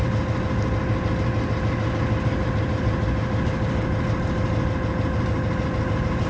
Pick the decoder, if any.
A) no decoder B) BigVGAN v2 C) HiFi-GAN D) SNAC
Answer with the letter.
A